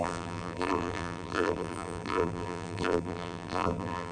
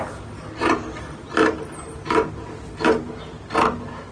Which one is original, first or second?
second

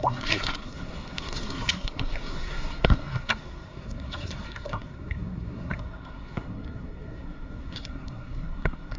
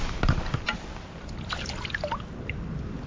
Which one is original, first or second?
second